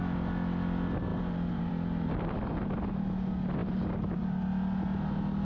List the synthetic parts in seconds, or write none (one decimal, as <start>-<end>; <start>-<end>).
1.1-1.7; 3.6-4.2